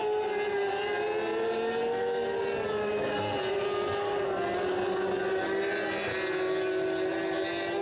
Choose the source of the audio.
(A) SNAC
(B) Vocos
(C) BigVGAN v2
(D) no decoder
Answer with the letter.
D